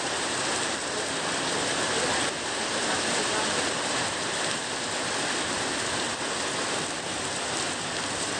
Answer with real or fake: real